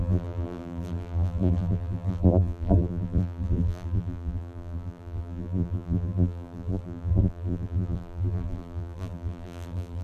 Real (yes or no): no